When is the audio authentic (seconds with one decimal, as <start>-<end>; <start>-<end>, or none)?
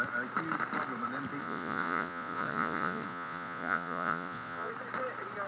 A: 0.0-1.4; 4.7-5.5